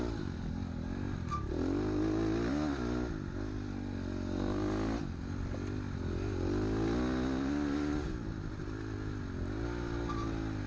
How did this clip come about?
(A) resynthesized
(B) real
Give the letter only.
B